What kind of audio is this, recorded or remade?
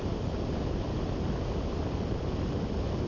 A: recorded